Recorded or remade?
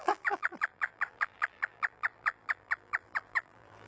remade